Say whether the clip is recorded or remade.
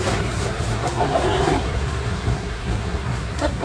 remade